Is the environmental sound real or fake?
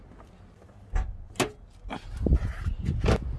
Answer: real